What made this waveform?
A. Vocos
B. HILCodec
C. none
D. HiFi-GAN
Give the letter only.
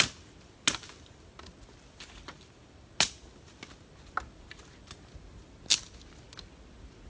C